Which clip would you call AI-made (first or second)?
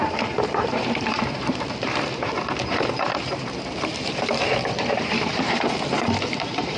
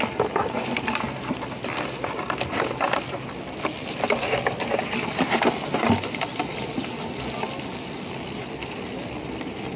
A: first